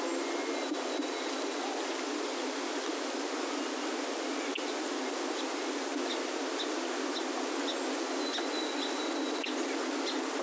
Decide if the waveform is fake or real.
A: real